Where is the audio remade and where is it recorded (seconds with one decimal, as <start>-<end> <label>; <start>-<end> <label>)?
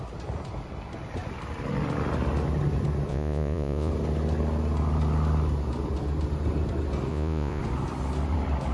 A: 0.0-3.1 recorded; 3.1-3.9 remade; 3.9-7.1 recorded; 7.1-7.6 remade; 7.6-8.7 recorded